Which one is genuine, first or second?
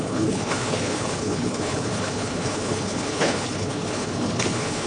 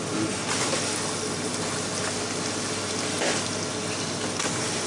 second